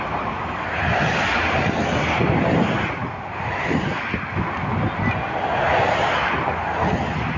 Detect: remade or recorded recorded